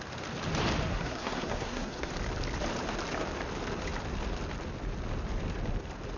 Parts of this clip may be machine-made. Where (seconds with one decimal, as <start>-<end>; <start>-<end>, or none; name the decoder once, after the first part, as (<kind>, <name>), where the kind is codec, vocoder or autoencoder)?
0.9-2.1 (codec, SNAC)